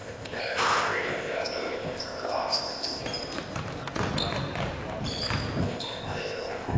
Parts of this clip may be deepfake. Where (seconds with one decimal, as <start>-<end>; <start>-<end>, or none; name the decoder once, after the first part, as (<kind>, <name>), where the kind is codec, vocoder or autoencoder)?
0.0-3.0 (codec, ZipCodec); 5.6-6.8